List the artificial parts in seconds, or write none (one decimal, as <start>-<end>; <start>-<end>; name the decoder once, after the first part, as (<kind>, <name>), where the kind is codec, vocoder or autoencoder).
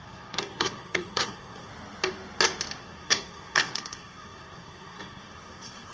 0.0-1.7 (codec, SNAC); 2.8-5.9